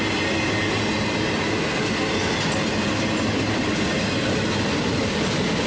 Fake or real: real